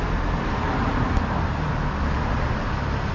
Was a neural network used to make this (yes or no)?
no